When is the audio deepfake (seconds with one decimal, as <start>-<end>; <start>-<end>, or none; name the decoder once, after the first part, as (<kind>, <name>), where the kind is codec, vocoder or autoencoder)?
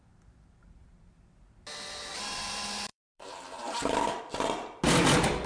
2.9-4.2 (vocoder, BigVGAN v2)